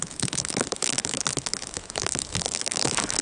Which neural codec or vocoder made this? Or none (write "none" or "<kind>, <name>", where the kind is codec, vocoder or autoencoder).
autoencoder, DAC-VAE